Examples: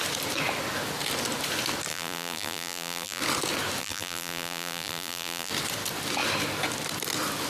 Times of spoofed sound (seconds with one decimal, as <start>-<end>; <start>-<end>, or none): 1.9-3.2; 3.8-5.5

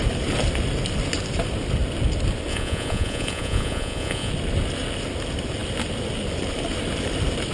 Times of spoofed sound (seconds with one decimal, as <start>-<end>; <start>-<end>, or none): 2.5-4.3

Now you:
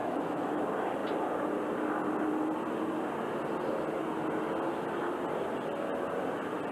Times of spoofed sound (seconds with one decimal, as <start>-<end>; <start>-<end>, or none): 0.0-0.6

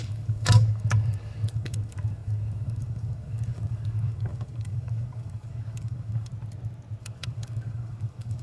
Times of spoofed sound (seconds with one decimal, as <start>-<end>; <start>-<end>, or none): 0.0-6.3; 7.0-8.4

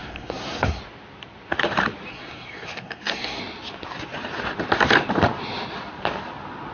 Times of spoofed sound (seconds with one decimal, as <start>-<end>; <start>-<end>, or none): 0.0-0.8; 2.1-3.4

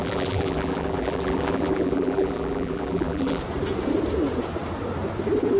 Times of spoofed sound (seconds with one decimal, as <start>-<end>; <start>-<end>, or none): 0.0-3.4

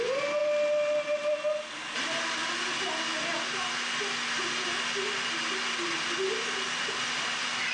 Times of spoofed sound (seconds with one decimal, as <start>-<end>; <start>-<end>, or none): none

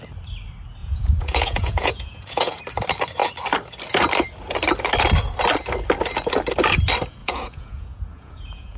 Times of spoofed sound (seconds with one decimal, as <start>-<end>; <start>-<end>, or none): 0.8-2.6; 7.2-8.8